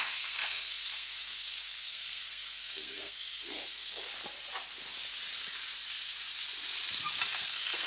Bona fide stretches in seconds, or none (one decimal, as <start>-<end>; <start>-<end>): 4.1-7.3